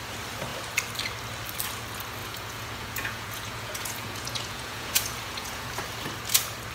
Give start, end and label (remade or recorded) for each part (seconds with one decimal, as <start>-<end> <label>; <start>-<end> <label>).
0.0-2.2 recorded; 2.2-5.8 remade; 5.8-6.7 recorded